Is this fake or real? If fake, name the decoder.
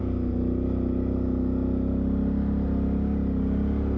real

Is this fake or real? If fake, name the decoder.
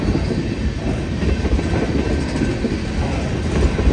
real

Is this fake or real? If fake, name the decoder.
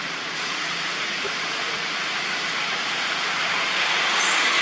fake, vocoder, Vocos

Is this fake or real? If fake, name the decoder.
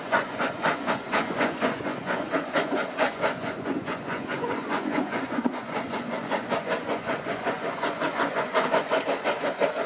fake, vocoder, Vocos